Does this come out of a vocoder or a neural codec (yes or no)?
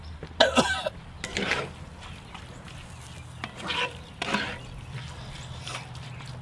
no